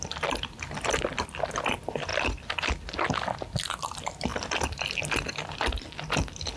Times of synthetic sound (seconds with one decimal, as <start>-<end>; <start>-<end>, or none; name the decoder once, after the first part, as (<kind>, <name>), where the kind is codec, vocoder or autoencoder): 2.1-2.7 (vocoder, BigVGAN v2)